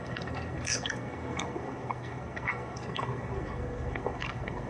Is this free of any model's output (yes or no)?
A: no